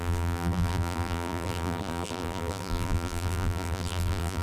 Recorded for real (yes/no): no